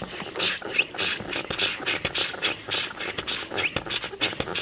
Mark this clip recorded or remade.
recorded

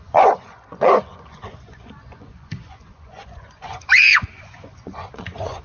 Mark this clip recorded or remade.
remade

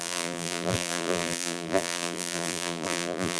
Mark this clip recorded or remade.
remade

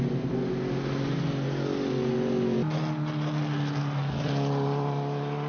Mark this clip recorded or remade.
recorded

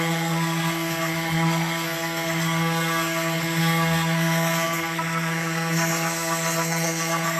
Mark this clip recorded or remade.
remade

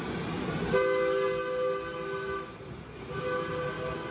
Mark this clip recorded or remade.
recorded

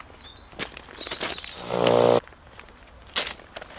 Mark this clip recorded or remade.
recorded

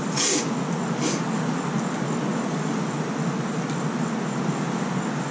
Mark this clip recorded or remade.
recorded